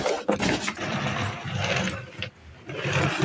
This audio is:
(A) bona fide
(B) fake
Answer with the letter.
A